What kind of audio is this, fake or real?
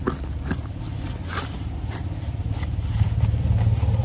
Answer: real